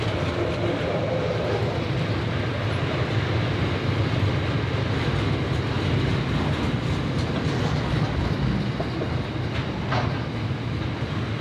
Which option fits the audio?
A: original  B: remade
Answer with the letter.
A